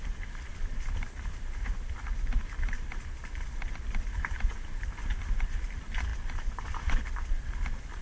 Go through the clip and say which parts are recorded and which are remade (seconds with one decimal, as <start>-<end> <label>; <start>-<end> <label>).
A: 0.0-8.0 recorded